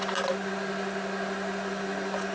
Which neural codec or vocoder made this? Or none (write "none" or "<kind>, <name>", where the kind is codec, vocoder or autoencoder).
none